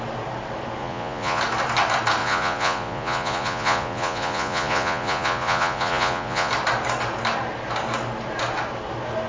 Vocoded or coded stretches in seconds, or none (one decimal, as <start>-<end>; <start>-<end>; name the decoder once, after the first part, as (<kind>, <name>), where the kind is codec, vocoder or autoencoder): 0.8-1.4 (vocoder, Vocos); 2.2-6.5